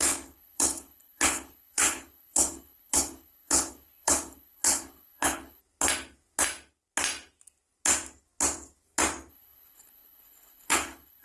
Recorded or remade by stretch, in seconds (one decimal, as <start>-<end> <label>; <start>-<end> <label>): 0.0-5.6 remade; 5.6-9.3 recorded; 9.3-11.2 remade